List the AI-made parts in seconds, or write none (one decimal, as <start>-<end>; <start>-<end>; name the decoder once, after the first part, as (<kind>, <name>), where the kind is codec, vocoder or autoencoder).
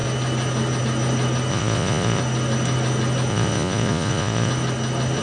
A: 1.5-2.2 (vocoder, Vocos); 3.3-4.5